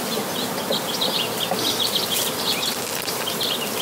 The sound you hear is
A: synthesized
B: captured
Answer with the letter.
B